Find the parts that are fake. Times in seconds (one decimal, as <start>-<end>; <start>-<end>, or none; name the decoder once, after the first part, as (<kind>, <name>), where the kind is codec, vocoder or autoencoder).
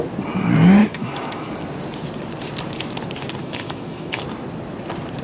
0.8-1.5 (autoencoder, DAC-VAE); 3.4-4.2